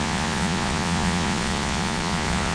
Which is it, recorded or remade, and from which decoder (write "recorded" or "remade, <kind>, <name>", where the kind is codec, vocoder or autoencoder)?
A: remade, vocoder, Vocos